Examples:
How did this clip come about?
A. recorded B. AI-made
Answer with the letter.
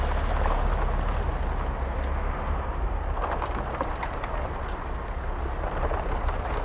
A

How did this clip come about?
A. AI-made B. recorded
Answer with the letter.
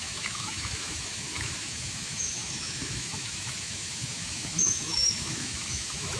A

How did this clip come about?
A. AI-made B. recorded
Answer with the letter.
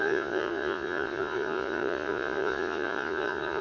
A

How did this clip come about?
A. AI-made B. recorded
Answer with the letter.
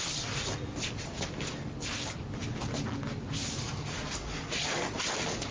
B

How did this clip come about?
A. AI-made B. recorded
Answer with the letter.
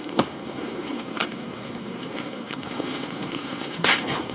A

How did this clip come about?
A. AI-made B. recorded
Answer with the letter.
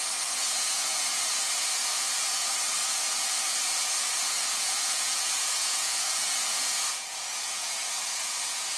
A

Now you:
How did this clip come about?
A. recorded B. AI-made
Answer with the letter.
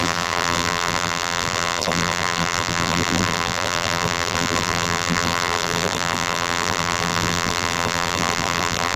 B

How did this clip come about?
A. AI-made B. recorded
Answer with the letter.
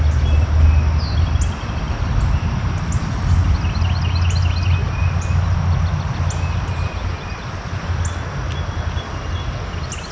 B